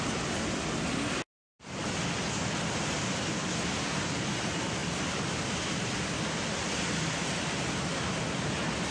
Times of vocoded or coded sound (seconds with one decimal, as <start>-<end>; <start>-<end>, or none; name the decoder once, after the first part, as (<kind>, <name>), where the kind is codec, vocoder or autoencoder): none